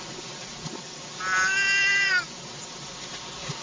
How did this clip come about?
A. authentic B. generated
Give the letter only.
A